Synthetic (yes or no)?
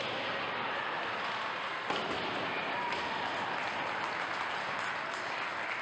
no